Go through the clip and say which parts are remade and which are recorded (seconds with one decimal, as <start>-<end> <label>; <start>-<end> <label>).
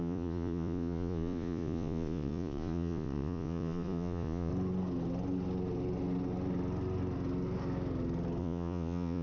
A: 0.0-4.5 remade; 4.5-8.4 recorded; 8.4-9.2 remade